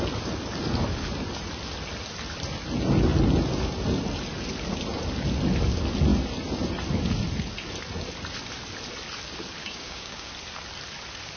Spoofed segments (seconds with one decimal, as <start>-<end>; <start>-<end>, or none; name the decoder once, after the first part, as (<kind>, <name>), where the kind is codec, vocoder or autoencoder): 9.6-10.3 (codec, DAC)